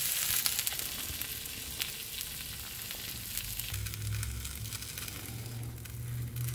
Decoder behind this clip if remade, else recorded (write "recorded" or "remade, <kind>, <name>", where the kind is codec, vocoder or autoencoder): recorded